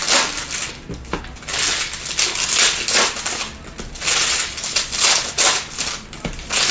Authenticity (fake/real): real